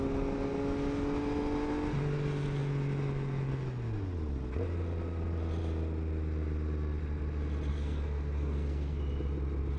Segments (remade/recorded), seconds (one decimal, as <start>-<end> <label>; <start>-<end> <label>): 0.0-7.7 recorded; 7.7-9.0 remade; 9.0-9.8 recorded